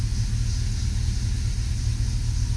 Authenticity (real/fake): real